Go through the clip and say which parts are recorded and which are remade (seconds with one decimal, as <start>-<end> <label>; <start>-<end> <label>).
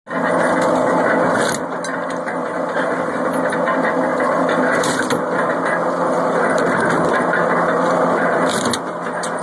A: 0.0-2.4 recorded; 2.4-3.2 remade; 3.2-4.1 recorded; 4.1-5.0 remade; 5.0-9.4 recorded